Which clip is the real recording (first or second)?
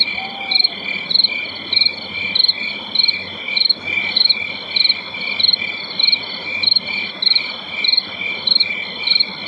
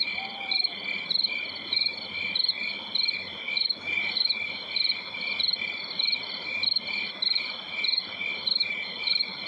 first